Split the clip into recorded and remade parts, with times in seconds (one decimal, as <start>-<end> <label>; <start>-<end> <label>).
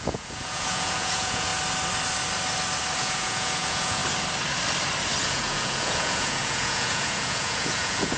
0.0-1.5 remade; 1.5-3.0 recorded; 3.0-4.0 remade; 4.0-5.2 recorded; 5.2-8.2 remade